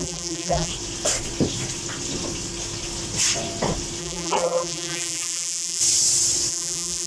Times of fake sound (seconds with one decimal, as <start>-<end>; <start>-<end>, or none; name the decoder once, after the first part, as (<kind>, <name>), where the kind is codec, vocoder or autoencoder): 0.0-0.7 (vocoder, BigVGAN v2); 4.0-5.8; 6.5-7.1